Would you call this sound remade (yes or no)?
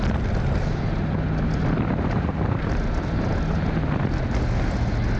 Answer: no